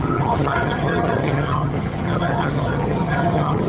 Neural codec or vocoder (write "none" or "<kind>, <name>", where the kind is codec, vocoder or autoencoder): vocoder, HiFi-GAN